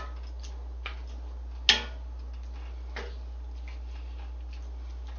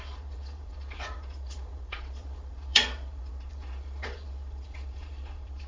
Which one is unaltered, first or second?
first